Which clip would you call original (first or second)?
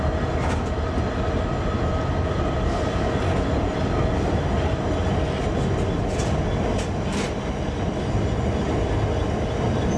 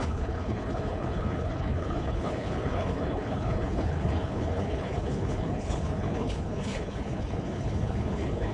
first